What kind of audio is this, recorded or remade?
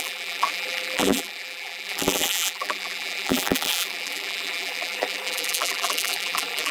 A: remade